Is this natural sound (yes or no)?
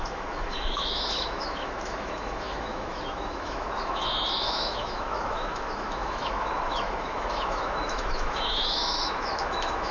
no